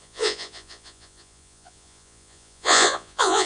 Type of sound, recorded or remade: remade